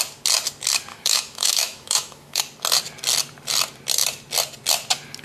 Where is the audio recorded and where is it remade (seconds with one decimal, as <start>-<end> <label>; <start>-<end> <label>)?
0.0-0.9 recorded; 0.9-2.4 remade; 2.4-5.2 recorded